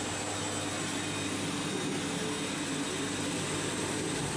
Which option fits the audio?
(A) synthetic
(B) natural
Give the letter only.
B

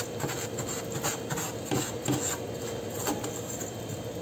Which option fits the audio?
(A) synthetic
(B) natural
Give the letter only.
B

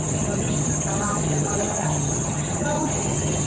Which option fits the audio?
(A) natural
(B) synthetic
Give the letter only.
B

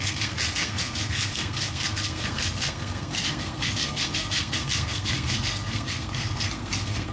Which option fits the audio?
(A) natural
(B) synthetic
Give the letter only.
B